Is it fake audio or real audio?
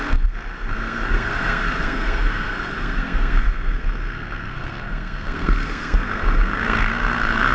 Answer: fake